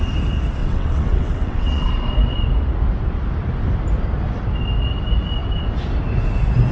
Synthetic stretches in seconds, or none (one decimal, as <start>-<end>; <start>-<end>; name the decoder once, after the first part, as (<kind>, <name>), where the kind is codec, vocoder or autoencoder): 0.6-1.9 (vocoder, WaveNeXt)